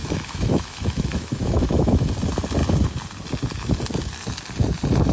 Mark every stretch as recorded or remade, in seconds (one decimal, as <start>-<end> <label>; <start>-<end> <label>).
0.0-2.1 remade; 2.1-5.1 recorded